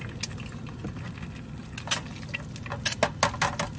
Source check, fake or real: real